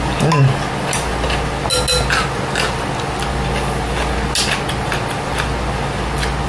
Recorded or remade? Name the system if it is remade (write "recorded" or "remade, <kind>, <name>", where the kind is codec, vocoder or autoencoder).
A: recorded